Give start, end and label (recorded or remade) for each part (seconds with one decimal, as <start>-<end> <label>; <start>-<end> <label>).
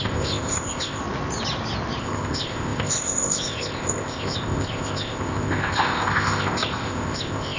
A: 0.0-1.0 remade; 1.0-2.0 recorded; 2.0-7.6 remade